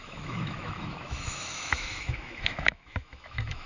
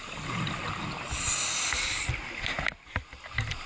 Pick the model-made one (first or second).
first